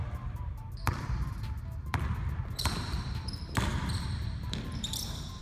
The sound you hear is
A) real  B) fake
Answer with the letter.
B